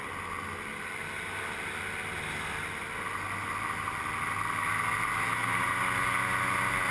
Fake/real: real